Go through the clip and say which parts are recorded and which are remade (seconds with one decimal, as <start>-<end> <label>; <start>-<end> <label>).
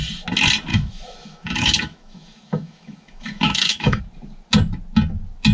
0.0-0.7 recorded; 0.7-4.0 remade; 4.0-5.5 recorded